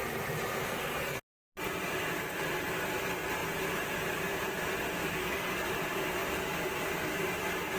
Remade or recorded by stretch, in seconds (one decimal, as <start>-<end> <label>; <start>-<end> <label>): 0.0-0.6 recorded; 0.6-1.2 remade; 1.2-5.2 recorded; 5.2-5.7 remade; 5.7-7.8 recorded